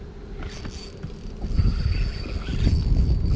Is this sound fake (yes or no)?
no